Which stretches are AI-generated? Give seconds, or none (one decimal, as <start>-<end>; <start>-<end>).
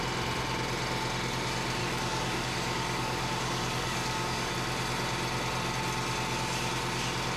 1.8-4.5